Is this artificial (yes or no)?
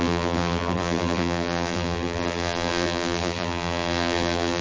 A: yes